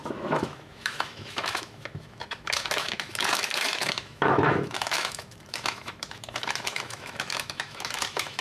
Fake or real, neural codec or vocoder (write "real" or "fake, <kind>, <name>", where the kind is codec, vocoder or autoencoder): fake, autoencoder, DAC-VAE